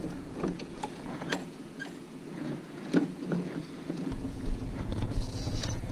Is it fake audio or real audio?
fake